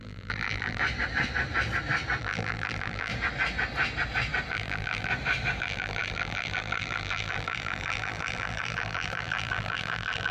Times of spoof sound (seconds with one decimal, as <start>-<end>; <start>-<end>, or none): 0.0-0.8; 2.2-3.1; 4.5-5.1; 5.6-10.3